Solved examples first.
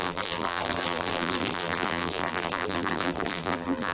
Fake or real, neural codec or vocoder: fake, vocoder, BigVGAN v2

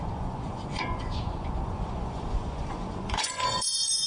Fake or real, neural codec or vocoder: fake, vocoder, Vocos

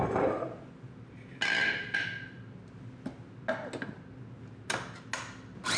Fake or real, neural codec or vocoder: real